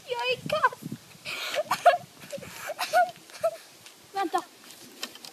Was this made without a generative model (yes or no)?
yes